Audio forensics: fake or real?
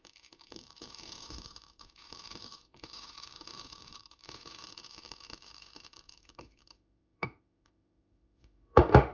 fake